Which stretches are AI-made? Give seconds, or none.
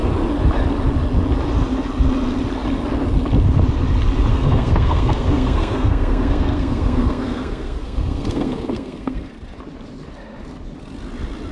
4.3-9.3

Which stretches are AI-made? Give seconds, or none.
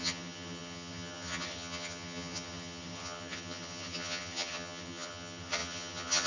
0.0-6.3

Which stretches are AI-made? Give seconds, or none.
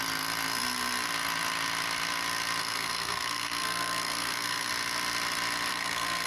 2.6-4.7; 5.7-6.3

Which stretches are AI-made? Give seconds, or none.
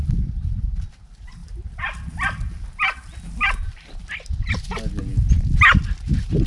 none